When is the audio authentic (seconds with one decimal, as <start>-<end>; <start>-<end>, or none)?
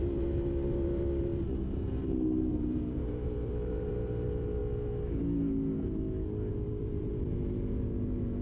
4.6-6.5